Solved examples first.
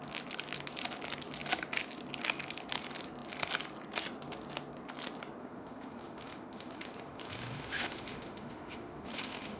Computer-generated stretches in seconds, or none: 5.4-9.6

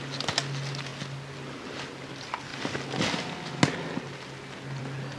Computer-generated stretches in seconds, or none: none

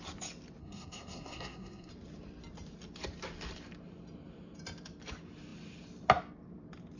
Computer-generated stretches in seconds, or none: 0.6-1.9

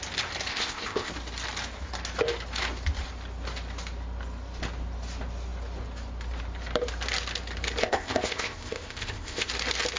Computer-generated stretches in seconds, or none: 0.5-1.1; 7.8-9.5

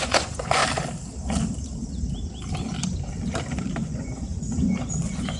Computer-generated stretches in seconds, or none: 0.0-0.6; 3.8-5.4

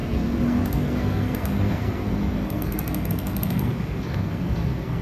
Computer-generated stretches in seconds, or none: 0.0-5.0

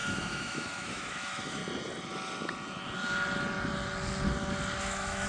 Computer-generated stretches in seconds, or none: 0.0-1.6; 4.8-5.3

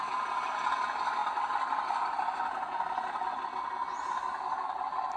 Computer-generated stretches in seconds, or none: none